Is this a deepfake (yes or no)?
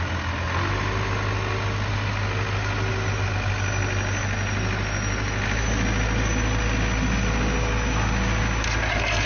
no